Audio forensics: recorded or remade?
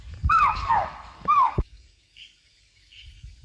remade